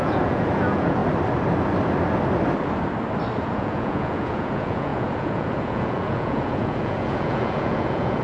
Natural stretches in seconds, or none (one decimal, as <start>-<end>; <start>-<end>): 1.0-3.4